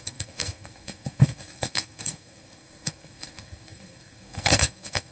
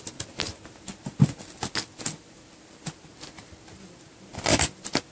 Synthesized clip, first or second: first